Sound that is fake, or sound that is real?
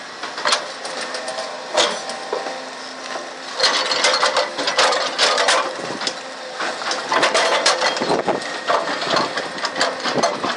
real